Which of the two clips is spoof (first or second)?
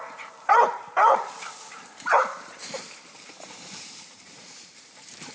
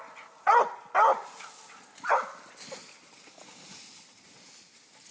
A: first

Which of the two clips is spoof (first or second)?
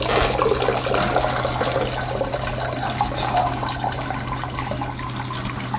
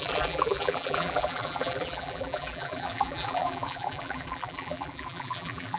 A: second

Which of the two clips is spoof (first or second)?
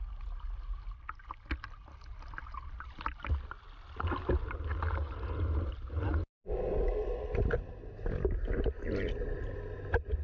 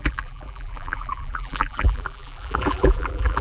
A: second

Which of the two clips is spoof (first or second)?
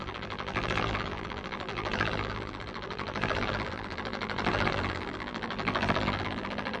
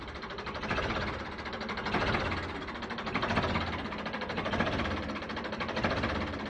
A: first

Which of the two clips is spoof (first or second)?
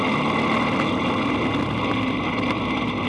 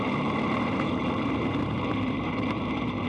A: second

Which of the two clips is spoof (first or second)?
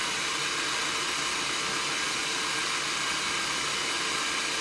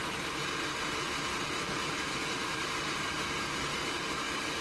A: second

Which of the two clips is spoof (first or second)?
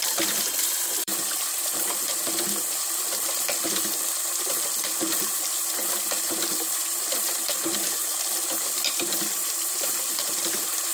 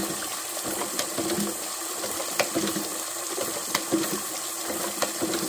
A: first